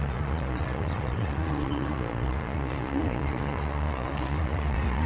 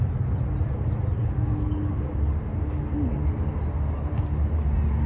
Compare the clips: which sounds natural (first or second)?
second